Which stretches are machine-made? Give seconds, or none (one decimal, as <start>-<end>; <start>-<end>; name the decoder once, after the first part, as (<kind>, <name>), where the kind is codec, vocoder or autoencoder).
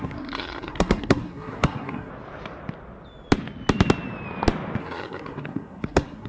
0.0-2.1 (codec, SNAC); 4.8-6.3